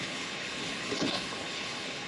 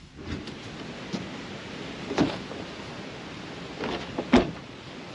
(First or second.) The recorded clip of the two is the second